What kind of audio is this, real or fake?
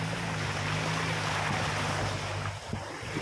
real